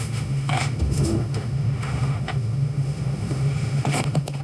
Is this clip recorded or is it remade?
remade